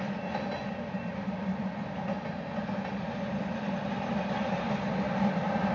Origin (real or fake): real